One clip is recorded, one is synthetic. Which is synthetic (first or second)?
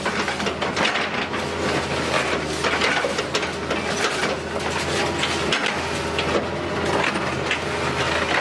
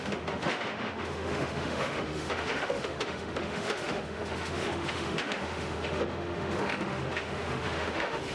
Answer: second